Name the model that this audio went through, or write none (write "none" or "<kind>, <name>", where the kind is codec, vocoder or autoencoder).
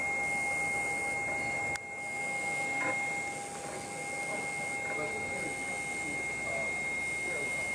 none